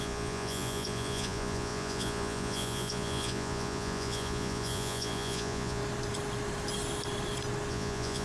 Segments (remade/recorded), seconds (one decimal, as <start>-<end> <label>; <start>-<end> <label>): 0.0-5.8 remade; 5.8-7.7 recorded; 7.7-8.2 remade